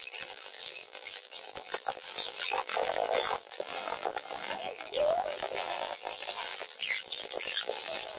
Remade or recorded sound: remade